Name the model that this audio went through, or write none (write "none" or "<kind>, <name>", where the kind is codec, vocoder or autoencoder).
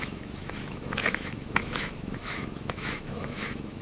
autoencoder, DAC-VAE